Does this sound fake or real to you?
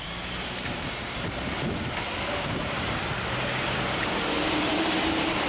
fake